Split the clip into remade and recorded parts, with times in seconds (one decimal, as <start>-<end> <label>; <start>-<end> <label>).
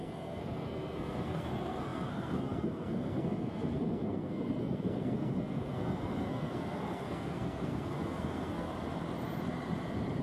0.0-8.7 remade; 8.7-10.2 recorded